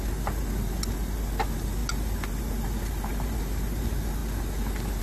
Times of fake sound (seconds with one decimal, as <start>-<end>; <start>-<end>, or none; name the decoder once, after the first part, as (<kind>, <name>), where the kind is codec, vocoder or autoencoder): none